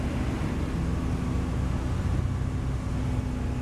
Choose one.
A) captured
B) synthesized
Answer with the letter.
A